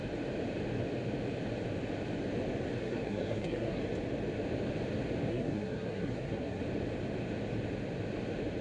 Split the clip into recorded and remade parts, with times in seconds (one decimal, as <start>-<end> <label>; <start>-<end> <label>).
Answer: 0.0-2.8 recorded; 2.8-3.8 remade; 3.8-5.3 recorded; 5.3-6.6 remade; 6.6-8.6 recorded